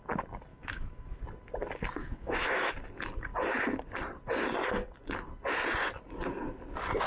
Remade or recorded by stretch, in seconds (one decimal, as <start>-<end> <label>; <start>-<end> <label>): 0.0-0.5 recorded; 0.5-1.2 remade; 1.2-2.0 recorded; 2.0-2.7 remade; 2.7-7.1 recorded